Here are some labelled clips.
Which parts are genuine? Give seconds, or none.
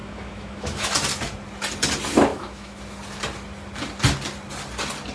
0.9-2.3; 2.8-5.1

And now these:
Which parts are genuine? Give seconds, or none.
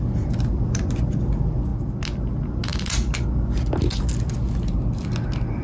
0.0-5.6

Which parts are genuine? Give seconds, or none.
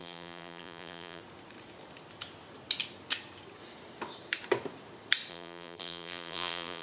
1.2-5.3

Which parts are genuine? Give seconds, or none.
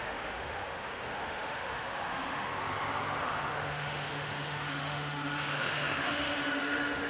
2.5-3.2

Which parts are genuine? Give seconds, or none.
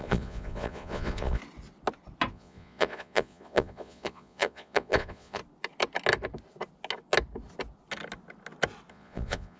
1.4-2.3; 5.4-8.9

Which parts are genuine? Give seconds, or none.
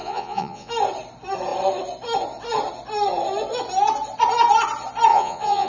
0.7-5.1